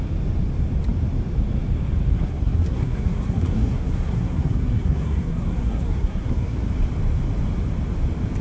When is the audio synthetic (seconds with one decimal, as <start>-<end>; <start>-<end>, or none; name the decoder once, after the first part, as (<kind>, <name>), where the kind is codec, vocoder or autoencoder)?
2.1-6.7 (codec, SNAC)